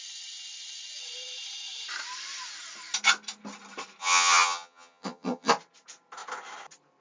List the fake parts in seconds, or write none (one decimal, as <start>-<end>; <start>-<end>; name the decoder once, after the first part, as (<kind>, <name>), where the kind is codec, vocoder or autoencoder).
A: 4.0-5.5 (vocoder, HiFi-GAN)